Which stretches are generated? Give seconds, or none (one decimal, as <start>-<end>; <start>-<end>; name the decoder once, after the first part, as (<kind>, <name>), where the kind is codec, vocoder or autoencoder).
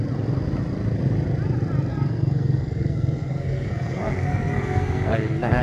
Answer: 1.9-5.6 (codec, SNAC)